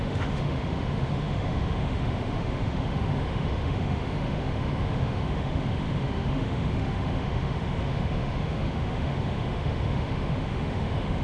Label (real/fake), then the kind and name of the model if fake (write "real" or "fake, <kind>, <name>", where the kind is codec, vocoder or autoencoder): fake, autoencoder, DAC-VAE